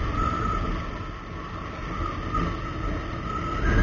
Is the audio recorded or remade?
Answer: recorded